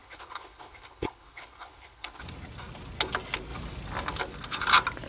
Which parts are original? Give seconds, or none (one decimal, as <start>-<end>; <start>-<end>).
2.2-5.1